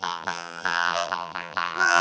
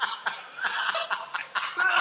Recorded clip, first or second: second